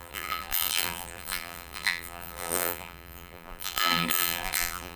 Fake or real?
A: fake